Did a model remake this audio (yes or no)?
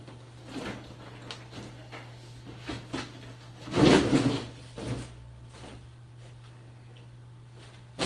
no